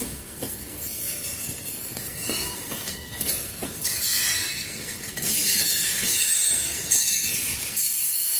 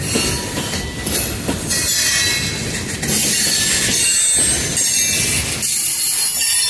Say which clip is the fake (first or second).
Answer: first